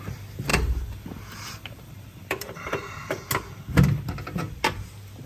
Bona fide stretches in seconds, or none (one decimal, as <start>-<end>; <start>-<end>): 0.0-0.5; 3.2-5.3

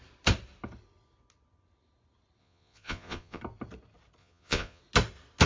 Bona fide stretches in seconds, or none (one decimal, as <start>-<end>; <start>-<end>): 0.0-2.4; 3.4-4.2; 4.8-5.5

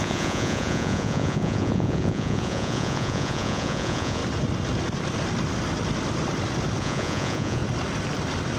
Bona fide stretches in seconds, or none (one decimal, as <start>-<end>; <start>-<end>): 4.2-6.8; 7.6-8.6

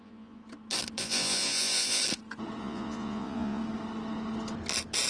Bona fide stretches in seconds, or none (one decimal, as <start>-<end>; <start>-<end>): 0.4-1.0; 2.0-2.6; 3.6-5.1